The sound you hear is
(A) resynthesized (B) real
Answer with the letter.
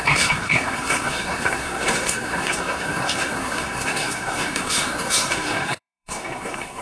A